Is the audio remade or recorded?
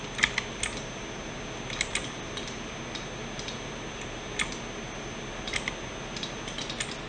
recorded